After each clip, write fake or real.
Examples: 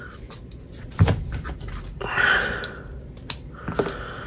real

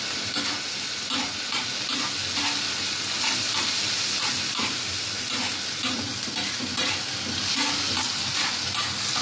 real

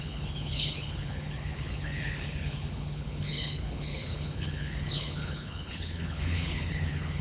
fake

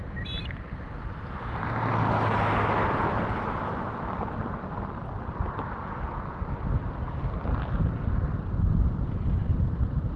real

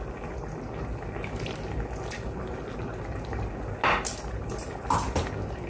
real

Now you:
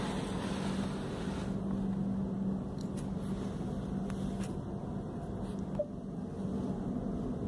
real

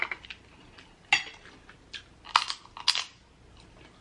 real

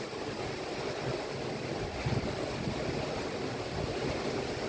real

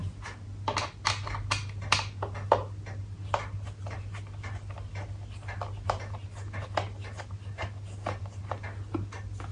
real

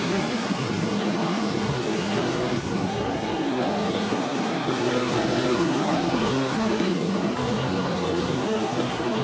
fake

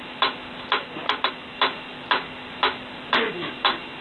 real